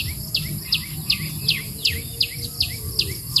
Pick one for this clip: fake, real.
real